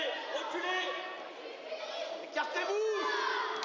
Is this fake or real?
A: real